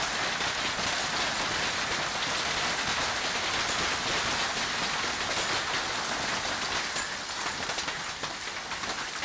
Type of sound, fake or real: real